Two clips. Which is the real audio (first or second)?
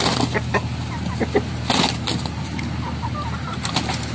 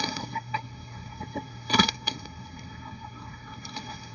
first